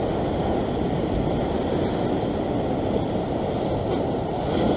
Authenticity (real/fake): real